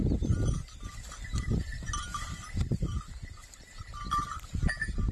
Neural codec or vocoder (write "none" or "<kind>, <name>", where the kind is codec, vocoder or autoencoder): none